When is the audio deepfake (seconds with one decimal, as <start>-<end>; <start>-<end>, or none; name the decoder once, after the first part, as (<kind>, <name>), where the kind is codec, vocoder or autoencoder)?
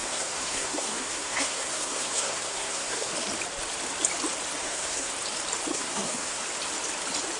0.0-3.1 (codec, SNAC); 4.6-5.1; 5.7-6.4